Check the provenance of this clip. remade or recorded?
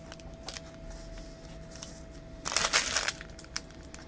recorded